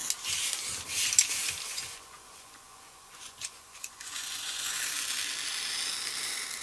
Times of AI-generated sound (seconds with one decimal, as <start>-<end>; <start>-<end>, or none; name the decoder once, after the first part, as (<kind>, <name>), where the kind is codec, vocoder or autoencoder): 1.7-4.8 (vocoder, Vocos)